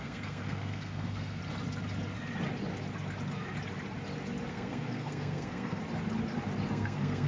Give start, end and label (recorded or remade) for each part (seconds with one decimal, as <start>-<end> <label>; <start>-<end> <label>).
0.0-1.4 remade; 1.4-4.5 recorded; 4.5-5.8 remade; 5.8-6.7 recorded; 6.7-7.3 remade

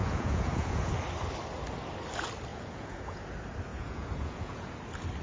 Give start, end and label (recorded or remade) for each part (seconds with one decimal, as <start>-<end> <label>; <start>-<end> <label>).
0.0-0.9 remade; 0.9-2.5 recorded; 2.5-3.2 remade; 3.2-3.7 recorded; 3.7-4.7 remade; 4.7-5.2 recorded

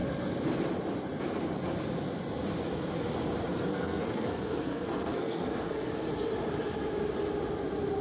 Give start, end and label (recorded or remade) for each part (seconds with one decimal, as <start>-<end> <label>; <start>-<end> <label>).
0.0-3.7 recorded; 3.7-5.9 remade; 5.9-8.0 recorded